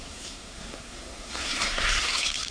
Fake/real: fake